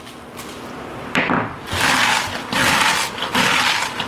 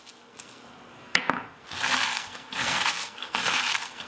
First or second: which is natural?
first